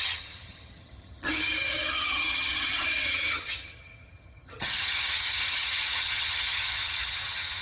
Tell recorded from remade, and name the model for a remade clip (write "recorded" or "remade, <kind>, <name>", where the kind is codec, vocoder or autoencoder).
remade, vocoder, HiFi-GAN